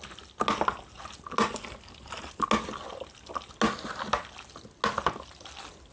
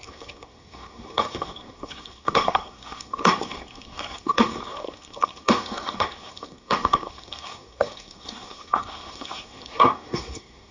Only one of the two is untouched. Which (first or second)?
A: first